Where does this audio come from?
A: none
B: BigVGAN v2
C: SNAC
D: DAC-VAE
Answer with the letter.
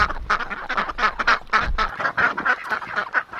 A